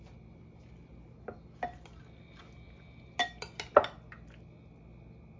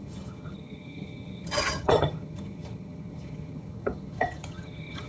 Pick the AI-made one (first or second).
second